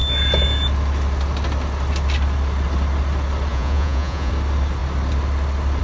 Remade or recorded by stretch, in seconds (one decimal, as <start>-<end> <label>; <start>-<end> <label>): 0.0-3.5 recorded; 3.5-4.3 remade; 4.3-5.8 recorded